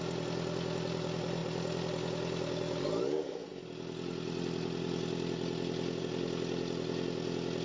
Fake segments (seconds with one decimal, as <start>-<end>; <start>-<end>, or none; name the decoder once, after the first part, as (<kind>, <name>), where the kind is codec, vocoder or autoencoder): none